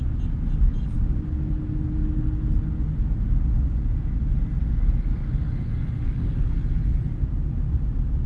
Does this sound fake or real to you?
real